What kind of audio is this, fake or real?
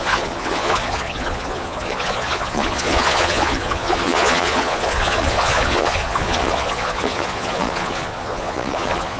fake